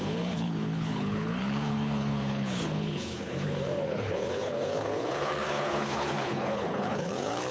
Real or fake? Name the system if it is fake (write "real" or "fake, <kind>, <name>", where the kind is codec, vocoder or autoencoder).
fake, codec, HILCodec